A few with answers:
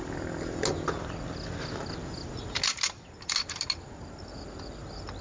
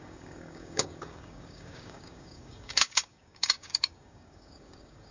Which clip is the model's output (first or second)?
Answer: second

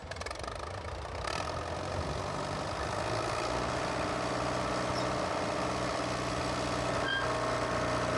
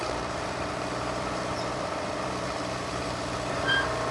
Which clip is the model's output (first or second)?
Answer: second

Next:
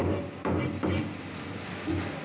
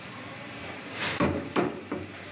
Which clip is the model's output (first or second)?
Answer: second